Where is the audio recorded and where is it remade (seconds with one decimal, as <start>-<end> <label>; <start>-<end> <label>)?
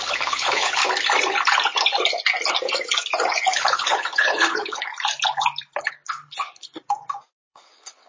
0.0-0.8 remade; 0.8-3.5 recorded; 3.5-4.9 remade; 4.9-5.8 recorded; 5.8-6.8 remade; 6.8-7.5 recorded; 7.5-8.1 remade